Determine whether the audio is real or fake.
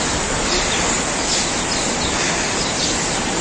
real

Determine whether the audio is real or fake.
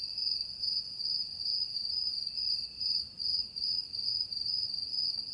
fake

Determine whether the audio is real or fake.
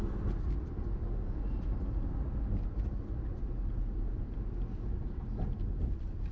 real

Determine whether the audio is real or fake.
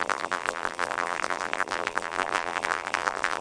fake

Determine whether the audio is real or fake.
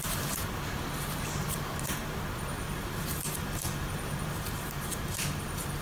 fake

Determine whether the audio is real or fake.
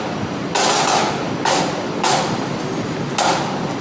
real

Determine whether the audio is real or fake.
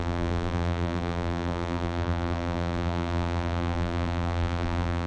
fake